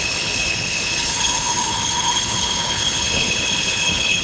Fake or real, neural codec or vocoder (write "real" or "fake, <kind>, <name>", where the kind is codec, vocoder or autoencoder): fake, codec, HILCodec